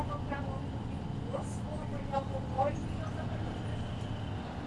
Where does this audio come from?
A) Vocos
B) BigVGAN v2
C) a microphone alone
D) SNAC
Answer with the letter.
C